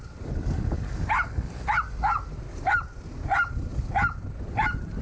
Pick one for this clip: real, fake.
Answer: real